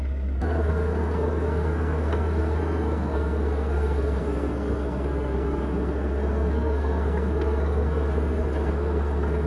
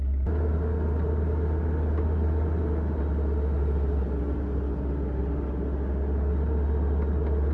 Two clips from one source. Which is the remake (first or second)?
first